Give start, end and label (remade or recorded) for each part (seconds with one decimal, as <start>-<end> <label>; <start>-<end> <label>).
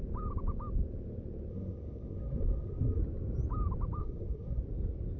0.0-1.5 recorded; 1.5-3.0 remade; 3.0-4.0 recorded; 4.0-4.6 remade; 4.6-5.2 recorded